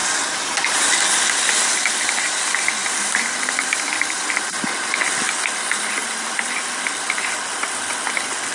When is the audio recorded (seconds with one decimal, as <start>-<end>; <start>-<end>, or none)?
0.0-2.8; 5.0-8.5